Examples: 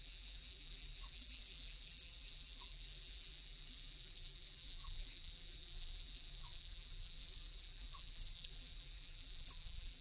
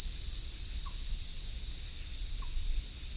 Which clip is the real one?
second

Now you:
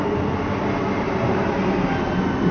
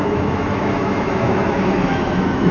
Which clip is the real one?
first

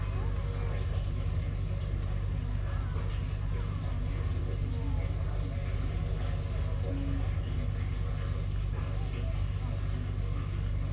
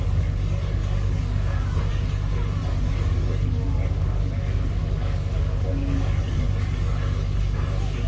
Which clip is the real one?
first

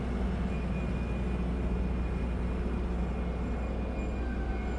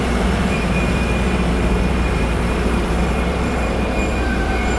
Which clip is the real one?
first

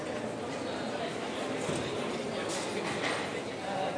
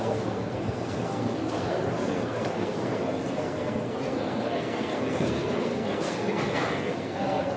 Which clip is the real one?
first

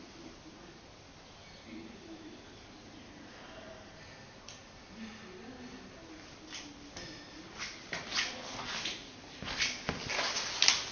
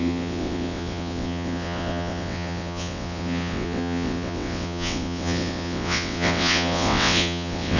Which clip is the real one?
first